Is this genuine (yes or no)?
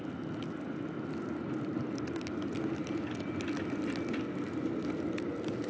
yes